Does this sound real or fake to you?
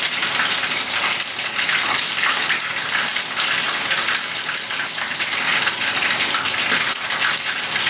real